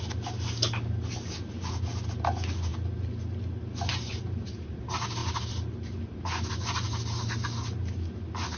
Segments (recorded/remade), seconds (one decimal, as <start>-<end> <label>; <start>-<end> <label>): 0.0-3.9 recorded; 3.9-4.8 remade; 4.8-8.6 recorded